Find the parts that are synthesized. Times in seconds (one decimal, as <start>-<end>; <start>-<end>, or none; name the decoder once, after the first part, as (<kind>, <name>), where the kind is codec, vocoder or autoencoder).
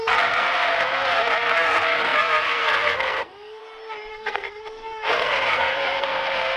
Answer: 0.0-3.6 (codec, SNAC); 4.1-6.6